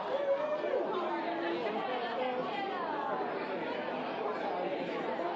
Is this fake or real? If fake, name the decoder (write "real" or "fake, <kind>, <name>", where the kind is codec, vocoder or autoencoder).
real